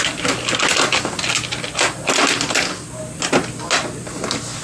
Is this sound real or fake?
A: real